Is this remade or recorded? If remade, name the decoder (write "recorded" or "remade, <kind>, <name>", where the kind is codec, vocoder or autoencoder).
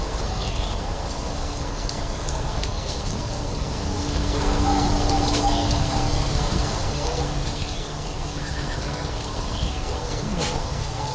remade, codec, SNAC